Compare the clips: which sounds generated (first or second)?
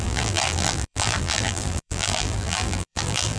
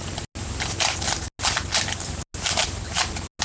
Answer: first